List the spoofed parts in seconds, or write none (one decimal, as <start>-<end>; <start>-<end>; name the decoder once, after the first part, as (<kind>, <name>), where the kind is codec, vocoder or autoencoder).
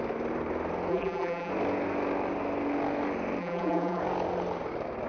0.9-1.5 (vocoder, BigVGAN v2); 3.4-4.0